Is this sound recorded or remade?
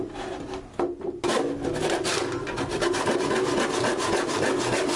recorded